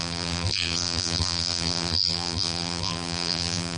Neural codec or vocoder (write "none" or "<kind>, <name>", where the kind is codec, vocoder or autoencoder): vocoder, BigVGAN v2